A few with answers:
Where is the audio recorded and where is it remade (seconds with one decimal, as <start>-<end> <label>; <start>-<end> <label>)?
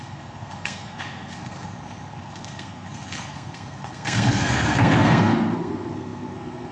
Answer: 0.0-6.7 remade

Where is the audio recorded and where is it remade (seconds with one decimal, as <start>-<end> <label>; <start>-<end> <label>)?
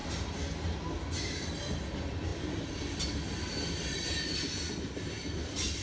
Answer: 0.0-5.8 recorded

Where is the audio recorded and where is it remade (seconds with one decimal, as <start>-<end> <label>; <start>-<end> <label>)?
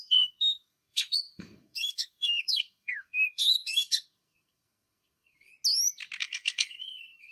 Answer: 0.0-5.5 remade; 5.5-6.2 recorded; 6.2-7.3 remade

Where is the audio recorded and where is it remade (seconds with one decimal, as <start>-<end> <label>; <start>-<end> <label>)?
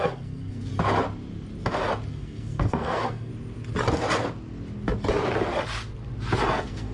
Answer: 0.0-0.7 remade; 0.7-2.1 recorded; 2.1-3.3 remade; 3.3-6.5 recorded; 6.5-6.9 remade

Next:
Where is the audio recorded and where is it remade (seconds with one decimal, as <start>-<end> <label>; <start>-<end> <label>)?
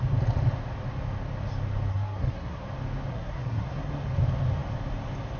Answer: 0.0-1.9 recorded; 1.9-2.6 remade; 2.6-3.1 recorded; 3.1-3.9 remade; 3.9-5.4 recorded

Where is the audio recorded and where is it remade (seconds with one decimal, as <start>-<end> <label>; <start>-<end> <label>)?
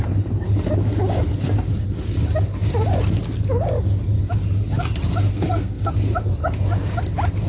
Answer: 0.0-5.3 recorded; 5.3-5.9 remade; 5.9-7.5 recorded